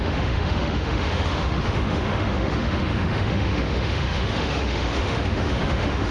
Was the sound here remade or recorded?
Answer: remade